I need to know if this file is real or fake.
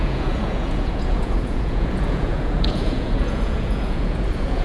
fake